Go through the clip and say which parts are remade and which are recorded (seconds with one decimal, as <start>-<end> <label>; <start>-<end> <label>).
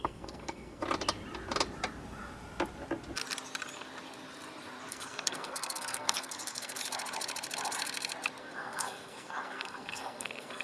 0.0-0.8 remade; 0.8-4.9 recorded; 4.9-6.8 remade; 6.8-8.4 recorded; 8.4-10.6 remade